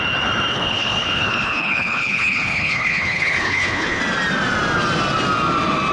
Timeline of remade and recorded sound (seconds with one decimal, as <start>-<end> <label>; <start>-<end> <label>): 0.0-0.5 recorded; 0.5-4.0 remade; 4.0-5.9 recorded